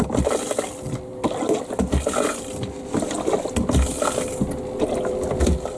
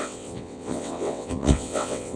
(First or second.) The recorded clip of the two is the first